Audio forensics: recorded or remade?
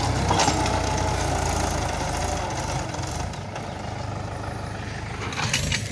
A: recorded